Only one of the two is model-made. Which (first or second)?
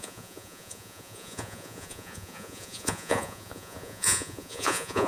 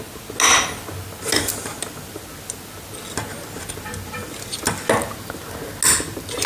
first